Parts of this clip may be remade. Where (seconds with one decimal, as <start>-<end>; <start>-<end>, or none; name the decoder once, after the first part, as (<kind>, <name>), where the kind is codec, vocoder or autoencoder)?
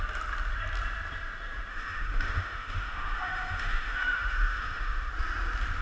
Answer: 1.7-5.1 (autoencoder, DAC-VAE)